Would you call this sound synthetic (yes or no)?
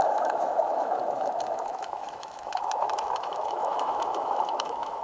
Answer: yes